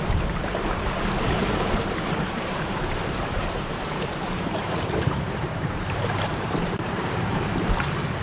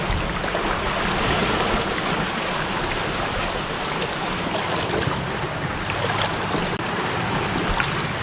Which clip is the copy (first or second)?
first